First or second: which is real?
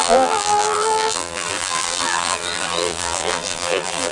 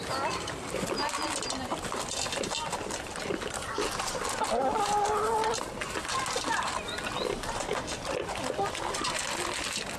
second